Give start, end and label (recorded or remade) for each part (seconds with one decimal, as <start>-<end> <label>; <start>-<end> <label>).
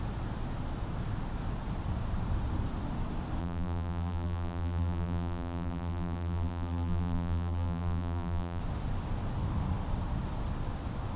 0.0-3.4 recorded; 3.4-8.6 remade; 8.6-11.2 recorded